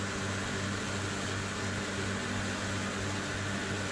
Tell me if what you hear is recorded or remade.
recorded